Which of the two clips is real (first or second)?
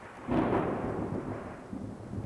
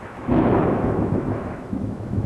first